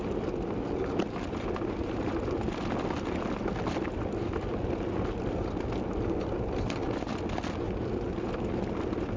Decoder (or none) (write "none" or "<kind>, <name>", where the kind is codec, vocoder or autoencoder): none